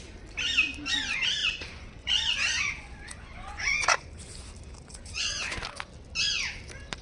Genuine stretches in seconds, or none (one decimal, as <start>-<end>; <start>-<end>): 0.0-1.4; 4.2-4.9; 5.6-7.0